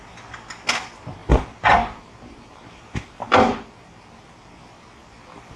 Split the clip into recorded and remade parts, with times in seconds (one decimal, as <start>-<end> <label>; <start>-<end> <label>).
0.0-1.2 recorded; 1.2-4.5 remade; 4.5-5.6 recorded